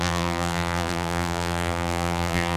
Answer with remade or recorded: remade